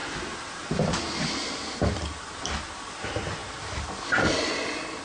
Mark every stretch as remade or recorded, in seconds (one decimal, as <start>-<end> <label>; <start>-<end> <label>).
0.0-5.0 recorded